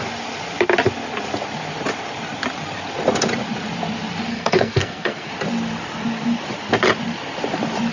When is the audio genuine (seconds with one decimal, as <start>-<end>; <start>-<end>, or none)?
0.0-4.3; 5.3-7.9